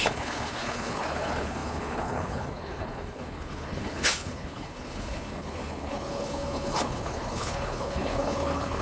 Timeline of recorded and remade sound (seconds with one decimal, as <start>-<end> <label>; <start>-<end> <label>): 0.0-8.8 remade